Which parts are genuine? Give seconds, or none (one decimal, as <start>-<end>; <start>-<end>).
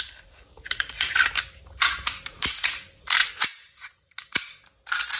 0.0-0.5; 1.1-2.3; 2.8-3.2; 4.2-5.2